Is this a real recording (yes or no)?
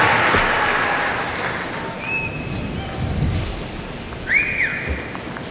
yes